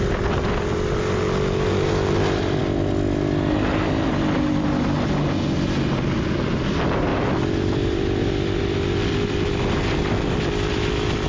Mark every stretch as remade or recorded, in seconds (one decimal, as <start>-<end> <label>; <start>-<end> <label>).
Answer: 0.0-11.3 recorded